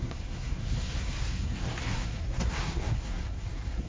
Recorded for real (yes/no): no